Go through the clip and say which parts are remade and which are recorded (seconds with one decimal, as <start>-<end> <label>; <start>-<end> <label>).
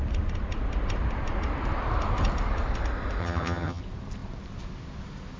0.0-3.2 recorded; 3.2-3.8 remade; 3.8-5.4 recorded